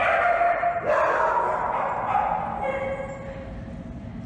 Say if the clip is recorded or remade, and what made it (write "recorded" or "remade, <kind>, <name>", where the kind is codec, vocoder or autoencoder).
recorded